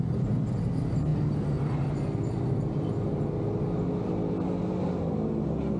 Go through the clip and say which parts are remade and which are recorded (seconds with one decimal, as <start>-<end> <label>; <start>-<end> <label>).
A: 0.0-5.8 recorded